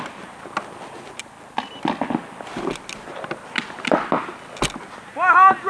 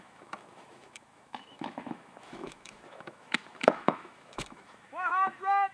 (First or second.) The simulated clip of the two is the second